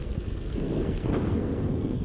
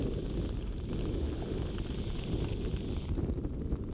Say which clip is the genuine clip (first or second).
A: second